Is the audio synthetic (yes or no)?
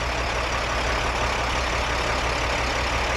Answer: no